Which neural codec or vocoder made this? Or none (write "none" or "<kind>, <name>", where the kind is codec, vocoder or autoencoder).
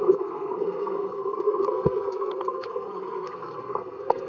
codec, SNAC